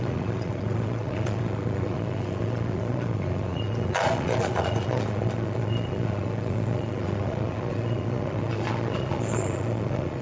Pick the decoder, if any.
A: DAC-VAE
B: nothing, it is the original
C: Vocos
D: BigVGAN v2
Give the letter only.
C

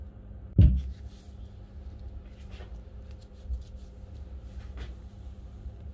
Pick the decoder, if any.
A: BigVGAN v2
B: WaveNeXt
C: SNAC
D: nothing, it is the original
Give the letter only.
A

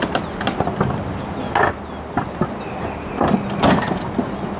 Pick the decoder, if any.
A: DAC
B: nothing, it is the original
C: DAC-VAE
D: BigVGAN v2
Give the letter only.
B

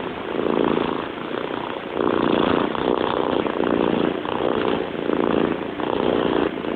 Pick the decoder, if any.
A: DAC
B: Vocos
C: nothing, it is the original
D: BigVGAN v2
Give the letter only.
C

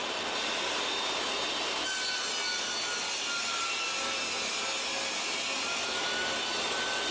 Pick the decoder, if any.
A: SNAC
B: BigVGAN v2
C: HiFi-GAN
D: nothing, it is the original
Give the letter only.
D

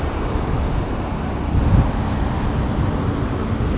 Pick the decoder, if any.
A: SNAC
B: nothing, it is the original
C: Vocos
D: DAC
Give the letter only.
B